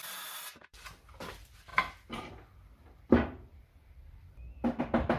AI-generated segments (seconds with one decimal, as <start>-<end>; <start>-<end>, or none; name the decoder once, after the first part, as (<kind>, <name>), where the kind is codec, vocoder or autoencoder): 0.0-5.2 (vocoder, BigVGAN v2)